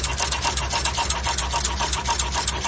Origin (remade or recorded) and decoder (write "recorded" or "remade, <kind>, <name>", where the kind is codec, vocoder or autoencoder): recorded